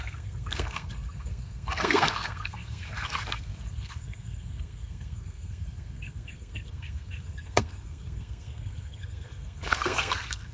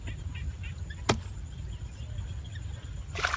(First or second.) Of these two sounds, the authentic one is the second